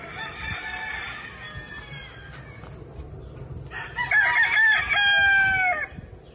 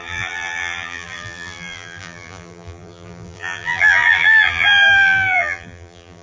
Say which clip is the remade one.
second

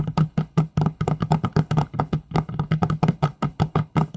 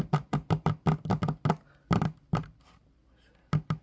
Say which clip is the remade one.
first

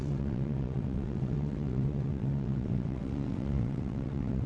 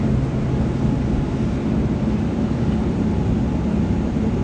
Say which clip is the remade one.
first